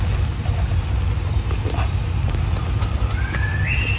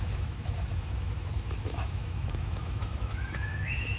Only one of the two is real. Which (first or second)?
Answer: first